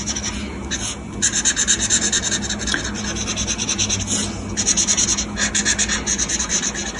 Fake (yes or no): no